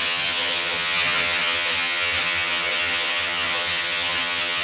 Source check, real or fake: fake